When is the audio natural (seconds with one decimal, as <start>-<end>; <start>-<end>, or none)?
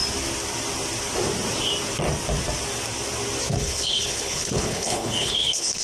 0.0-3.5